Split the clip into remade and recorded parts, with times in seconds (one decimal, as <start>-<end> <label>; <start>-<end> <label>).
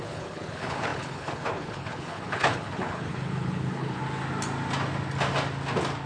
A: 0.0-4.0 remade; 4.0-6.1 recorded